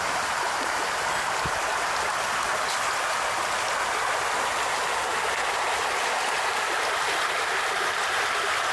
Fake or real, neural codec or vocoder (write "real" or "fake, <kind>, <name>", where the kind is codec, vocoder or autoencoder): real